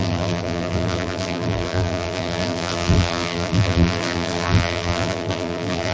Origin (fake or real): fake